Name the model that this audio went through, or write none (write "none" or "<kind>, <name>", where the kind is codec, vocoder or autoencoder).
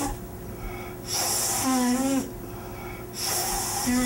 none